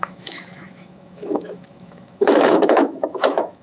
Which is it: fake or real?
fake